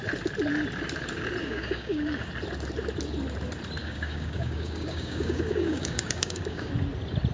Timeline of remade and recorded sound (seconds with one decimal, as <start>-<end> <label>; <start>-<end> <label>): 0.0-1.4 recorded; 1.4-2.3 remade; 2.3-3.8 recorded; 3.8-6.7 remade; 6.7-7.3 recorded